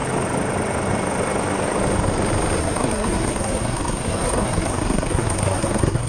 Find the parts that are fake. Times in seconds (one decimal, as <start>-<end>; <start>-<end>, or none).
2.6-6.1